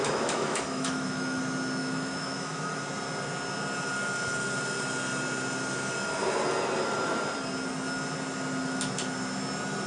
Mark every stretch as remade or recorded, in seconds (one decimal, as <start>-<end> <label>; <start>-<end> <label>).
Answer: 0.0-1.4 remade; 1.4-1.8 recorded; 1.8-2.8 remade; 2.8-9.9 recorded